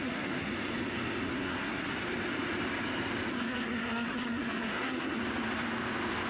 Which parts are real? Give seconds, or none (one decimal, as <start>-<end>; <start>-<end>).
0.5-1.3; 1.9-3.3; 5.2-6.3